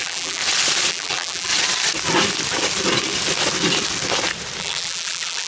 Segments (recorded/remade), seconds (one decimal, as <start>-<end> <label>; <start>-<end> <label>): 0.0-0.4 remade; 0.4-0.9 recorded; 0.9-1.5 remade; 1.5-4.6 recorded; 4.6-5.5 remade